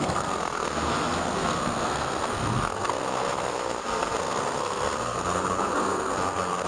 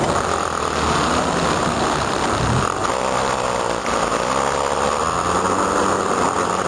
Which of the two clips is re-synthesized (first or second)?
first